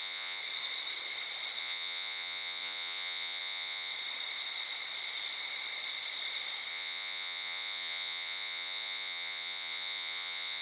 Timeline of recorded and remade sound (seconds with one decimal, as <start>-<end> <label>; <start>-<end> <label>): 0.0-0.4 remade; 0.4-1.6 recorded; 1.6-3.9 remade; 3.9-6.7 recorded; 6.7-10.6 remade